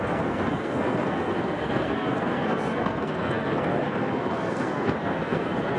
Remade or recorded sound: remade